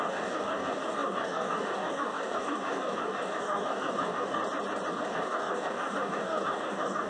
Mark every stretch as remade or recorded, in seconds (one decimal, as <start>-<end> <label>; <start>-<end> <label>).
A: 0.0-4.4 remade; 4.4-4.9 recorded; 4.9-7.1 remade